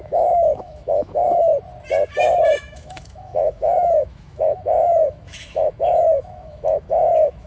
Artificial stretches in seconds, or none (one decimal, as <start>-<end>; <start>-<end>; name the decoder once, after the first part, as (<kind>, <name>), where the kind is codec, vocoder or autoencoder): 0.0-1.5 (autoencoder, DAC-VAE); 2.2-7.5